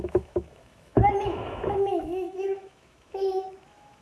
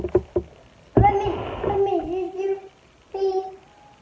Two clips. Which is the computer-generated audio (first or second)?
first